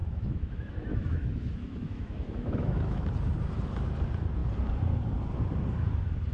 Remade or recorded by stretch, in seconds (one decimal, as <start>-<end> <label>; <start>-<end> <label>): 0.0-3.1 remade; 3.1-6.3 recorded